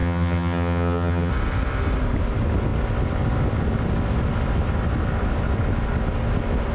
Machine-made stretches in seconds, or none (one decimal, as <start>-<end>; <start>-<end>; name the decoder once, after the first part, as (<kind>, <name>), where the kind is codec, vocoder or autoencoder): 0.0-1.3 (vocoder, HiFi-GAN)